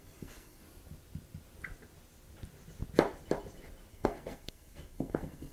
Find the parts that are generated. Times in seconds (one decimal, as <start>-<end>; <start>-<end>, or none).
0.0-0.6; 3.9-5.5